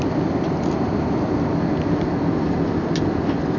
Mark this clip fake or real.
real